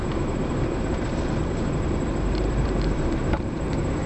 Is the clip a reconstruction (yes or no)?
yes